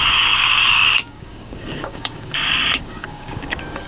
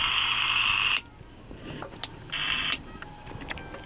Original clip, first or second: second